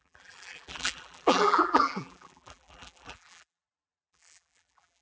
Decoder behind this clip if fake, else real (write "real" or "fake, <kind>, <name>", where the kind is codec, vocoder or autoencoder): fake, vocoder, BigVGAN v2